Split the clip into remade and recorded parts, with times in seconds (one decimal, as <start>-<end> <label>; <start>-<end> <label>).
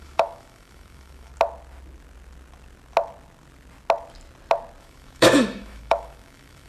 0.0-1.3 remade; 1.3-4.8 recorded; 4.8-6.7 remade